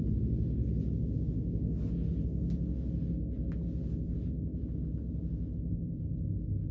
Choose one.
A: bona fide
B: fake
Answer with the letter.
A